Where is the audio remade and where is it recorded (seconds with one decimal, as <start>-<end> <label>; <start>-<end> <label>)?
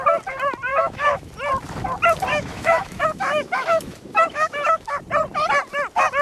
0.0-0.7 recorded; 0.7-1.3 remade; 1.3-2.3 recorded; 2.3-5.0 remade; 5.0-6.2 recorded